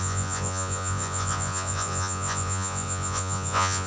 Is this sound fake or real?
fake